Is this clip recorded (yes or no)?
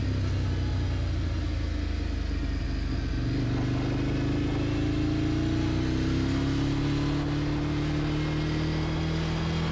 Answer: yes